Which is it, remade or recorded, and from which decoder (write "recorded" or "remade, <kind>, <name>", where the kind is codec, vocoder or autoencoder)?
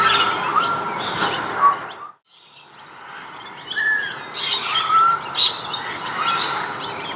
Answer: recorded